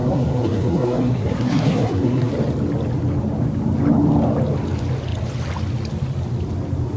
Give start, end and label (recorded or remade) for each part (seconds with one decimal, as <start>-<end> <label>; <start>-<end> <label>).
0.0-2.3 remade; 2.3-7.0 recorded